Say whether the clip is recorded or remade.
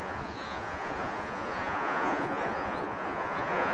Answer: remade